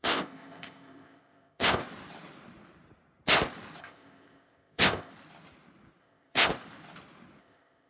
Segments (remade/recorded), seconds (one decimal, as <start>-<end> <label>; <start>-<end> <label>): 0.0-1.8 remade; 1.8-3.8 recorded; 3.8-5.1 remade; 5.1-6.0 recorded; 6.0-6.5 remade; 6.5-7.4 recorded; 7.4-7.9 remade